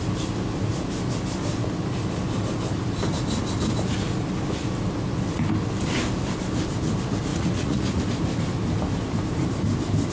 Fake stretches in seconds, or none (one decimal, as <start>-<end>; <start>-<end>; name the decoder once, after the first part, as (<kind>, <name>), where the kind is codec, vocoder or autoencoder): 7.3-8.0 (vocoder, Vocos)